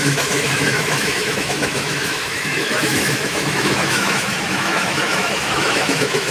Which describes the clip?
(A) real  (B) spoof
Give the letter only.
B